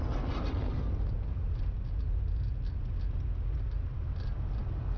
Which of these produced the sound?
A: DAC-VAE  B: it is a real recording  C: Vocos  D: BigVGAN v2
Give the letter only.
B